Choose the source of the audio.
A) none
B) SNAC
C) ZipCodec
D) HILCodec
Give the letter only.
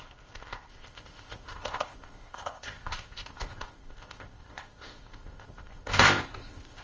C